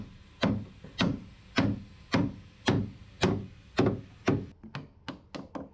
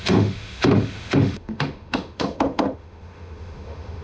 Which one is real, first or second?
first